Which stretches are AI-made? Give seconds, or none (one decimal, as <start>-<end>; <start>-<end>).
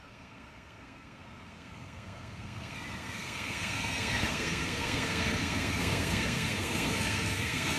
0.0-7.8